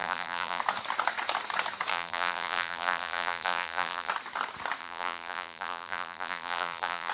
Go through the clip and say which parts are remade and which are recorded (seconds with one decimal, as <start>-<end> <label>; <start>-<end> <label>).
0.0-0.6 remade; 0.6-1.9 recorded; 1.9-4.1 remade; 4.1-4.8 recorded; 4.8-7.1 remade